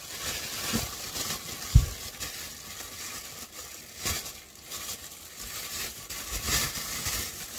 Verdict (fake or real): real